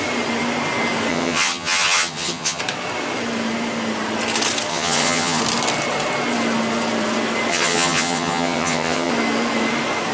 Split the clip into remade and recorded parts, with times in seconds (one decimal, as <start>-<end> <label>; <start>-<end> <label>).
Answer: 0.0-1.1 recorded; 1.1-2.6 remade; 2.6-4.7 recorded; 4.7-5.4 remade; 5.4-7.5 recorded; 7.5-9.1 remade; 9.1-10.1 recorded